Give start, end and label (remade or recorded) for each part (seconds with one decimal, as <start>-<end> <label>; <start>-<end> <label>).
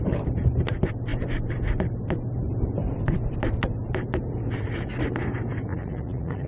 0.0-5.7 recorded; 5.7-6.5 remade